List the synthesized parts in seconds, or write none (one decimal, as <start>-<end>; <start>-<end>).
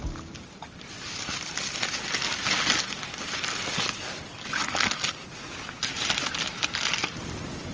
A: none